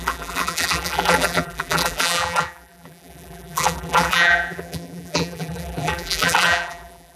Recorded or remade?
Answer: remade